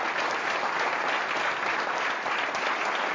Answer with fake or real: real